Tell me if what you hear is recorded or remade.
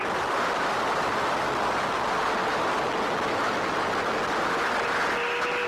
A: recorded